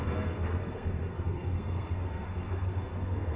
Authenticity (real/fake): fake